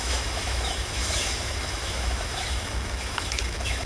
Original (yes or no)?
no